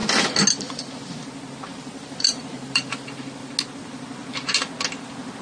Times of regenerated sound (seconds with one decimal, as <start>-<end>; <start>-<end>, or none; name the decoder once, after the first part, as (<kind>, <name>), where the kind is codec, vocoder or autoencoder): 1.7-2.9 (vocoder, BigVGAN v2)